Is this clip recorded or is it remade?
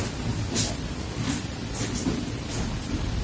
recorded